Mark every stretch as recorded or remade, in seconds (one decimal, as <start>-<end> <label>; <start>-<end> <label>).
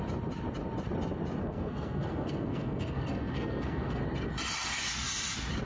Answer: 0.0-1.4 recorded; 1.4-4.0 remade; 4.0-5.7 recorded